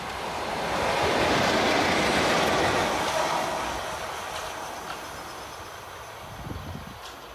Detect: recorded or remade recorded